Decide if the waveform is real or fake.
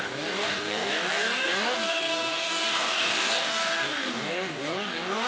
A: fake